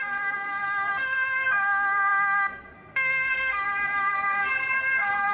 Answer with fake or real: fake